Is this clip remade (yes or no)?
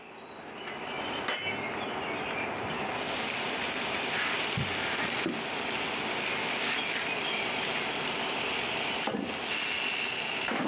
no